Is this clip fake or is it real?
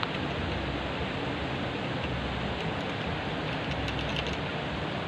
real